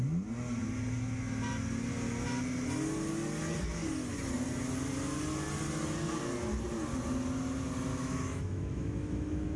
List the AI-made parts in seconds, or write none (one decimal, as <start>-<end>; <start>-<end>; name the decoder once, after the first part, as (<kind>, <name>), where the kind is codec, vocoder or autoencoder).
7.9-9.6 (autoencoder, DAC-VAE)